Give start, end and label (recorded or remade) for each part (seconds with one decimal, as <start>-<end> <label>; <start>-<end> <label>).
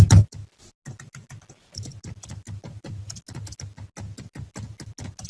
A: 0.0-5.3 recorded